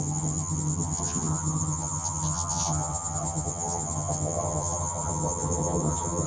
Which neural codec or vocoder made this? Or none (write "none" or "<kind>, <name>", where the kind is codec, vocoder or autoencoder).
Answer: vocoder, HiFi-GAN